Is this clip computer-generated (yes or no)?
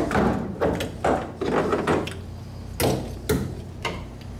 no